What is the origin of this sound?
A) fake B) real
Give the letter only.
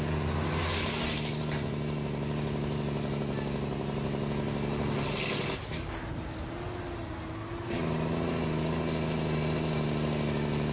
B